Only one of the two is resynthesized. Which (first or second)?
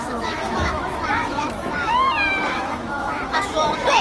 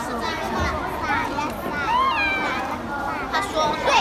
first